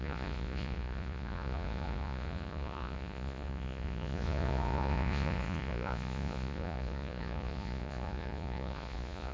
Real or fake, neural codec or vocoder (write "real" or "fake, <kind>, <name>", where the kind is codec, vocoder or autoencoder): fake, vocoder, Vocos